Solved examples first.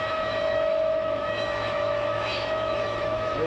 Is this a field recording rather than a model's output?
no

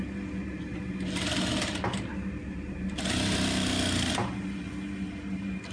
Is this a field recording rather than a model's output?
yes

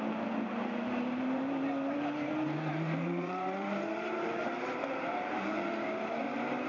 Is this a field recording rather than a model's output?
no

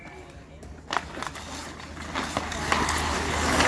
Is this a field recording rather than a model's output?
yes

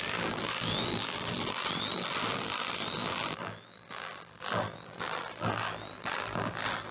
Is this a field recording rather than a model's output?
no